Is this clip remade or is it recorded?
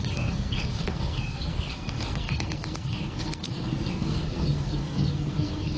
remade